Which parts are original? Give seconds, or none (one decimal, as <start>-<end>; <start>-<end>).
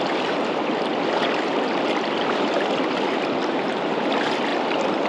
0.0-5.1